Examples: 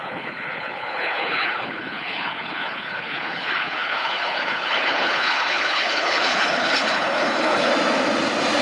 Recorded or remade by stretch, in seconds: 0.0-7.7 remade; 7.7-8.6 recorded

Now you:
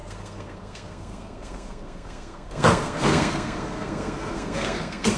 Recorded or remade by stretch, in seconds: 0.0-5.2 remade

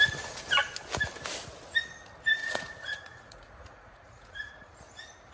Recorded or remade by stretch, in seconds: 0.0-2.4 recorded; 2.4-4.7 remade; 4.7-5.3 recorded

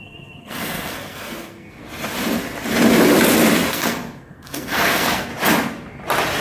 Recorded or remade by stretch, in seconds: 0.0-1.8 remade; 1.8-3.7 recorded; 3.7-5.3 remade; 5.3-6.4 recorded